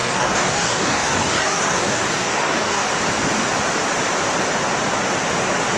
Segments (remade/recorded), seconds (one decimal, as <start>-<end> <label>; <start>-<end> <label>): 0.0-2.9 remade; 2.9-5.8 recorded

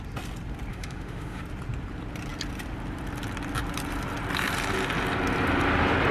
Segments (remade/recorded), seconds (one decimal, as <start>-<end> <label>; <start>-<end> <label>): 0.0-0.7 recorded; 0.7-1.4 remade; 1.4-6.1 recorded

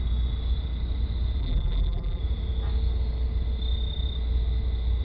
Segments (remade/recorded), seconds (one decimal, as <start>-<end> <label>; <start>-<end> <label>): 0.0-1.4 recorded; 1.4-2.2 remade; 2.2-5.0 recorded

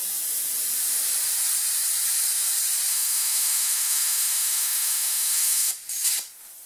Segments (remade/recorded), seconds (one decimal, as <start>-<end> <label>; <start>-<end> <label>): 0.0-2.9 recorded; 2.9-5.7 remade; 5.7-6.7 recorded

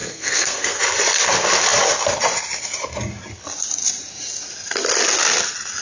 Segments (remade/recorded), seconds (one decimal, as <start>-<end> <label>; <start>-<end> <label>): 0.0-0.8 remade; 0.8-5.8 recorded

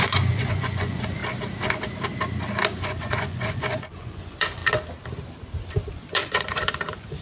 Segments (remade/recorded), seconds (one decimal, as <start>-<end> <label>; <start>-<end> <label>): 0.0-1.2 remade; 1.2-2.8 recorded; 2.8-4.6 remade; 4.6-5.9 recorded; 5.9-7.2 remade

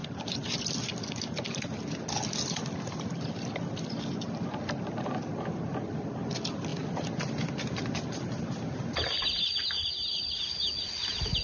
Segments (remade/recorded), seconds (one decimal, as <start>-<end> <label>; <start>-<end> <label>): 0.0-11.4 recorded